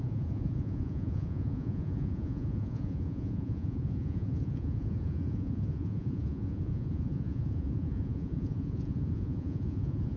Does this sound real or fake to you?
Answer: fake